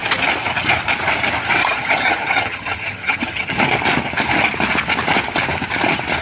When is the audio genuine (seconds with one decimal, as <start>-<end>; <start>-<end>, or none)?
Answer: 0.0-1.6; 3.6-6.2